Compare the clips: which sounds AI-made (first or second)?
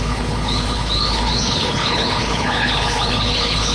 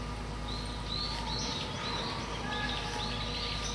first